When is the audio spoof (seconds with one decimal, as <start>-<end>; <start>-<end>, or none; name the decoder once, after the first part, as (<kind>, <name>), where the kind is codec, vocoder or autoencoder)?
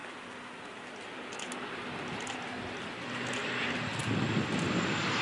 none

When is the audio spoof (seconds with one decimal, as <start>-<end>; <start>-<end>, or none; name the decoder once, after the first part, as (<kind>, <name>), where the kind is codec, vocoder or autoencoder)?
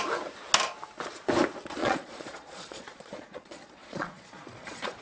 1.8-5.0 (vocoder, Vocos)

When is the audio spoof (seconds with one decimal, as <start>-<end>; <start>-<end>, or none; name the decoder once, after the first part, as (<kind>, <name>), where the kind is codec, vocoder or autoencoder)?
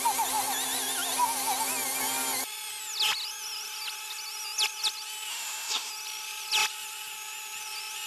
5.3-5.9 (autoencoder, DAC-VAE)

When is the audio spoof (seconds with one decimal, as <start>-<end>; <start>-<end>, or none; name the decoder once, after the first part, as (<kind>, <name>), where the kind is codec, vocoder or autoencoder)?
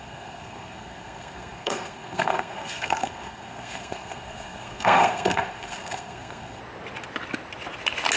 0.0-6.6 (codec, SNAC)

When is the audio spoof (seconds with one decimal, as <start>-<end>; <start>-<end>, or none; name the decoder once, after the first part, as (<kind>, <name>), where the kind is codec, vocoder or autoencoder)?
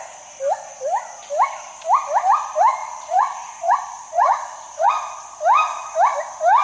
2.8-4.9 (vocoder, Vocos)